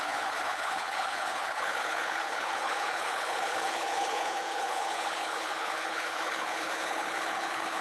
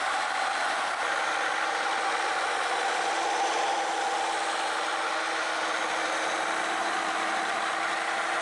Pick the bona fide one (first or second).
second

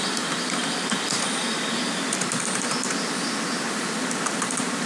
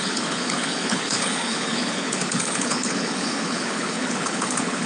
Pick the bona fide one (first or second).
first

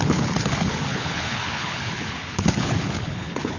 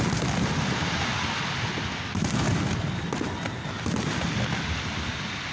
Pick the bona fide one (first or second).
second